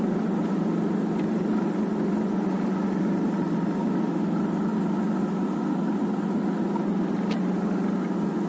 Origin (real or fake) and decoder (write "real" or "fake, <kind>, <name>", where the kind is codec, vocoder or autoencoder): real